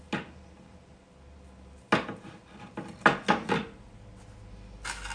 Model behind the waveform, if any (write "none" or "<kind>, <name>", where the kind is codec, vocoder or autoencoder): none